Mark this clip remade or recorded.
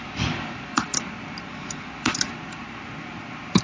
remade